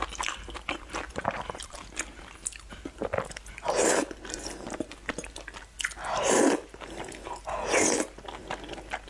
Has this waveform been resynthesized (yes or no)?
no